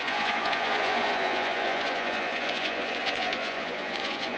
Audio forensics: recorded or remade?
remade